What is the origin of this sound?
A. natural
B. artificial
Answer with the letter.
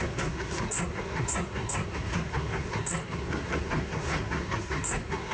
B